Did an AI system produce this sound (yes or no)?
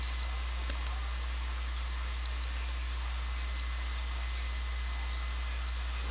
no